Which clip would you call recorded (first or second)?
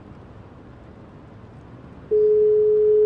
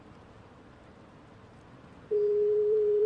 first